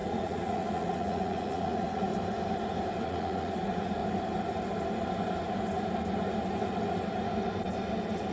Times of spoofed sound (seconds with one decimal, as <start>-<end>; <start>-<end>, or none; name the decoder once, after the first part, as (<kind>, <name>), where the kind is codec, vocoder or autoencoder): 0.0-2.1 (vocoder, Vocos); 3.0-4.0